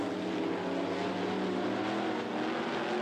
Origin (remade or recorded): recorded